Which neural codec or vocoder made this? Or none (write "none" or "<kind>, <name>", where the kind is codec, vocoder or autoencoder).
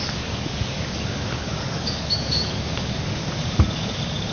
codec, DAC